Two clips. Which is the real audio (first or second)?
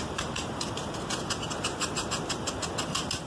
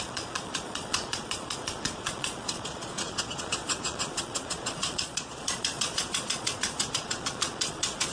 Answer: first